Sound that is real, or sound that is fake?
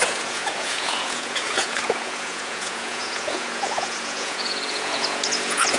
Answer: fake